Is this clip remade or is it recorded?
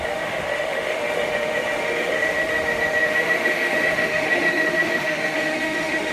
remade